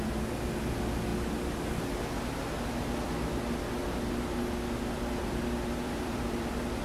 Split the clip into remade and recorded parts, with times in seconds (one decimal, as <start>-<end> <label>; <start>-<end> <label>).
0.0-5.8 recorded; 5.8-6.8 remade